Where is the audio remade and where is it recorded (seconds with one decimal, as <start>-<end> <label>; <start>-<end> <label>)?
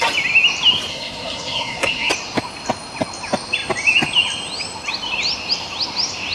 0.0-0.9 recorded; 0.9-2.1 remade; 2.1-6.3 recorded